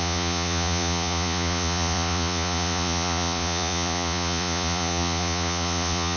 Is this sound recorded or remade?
remade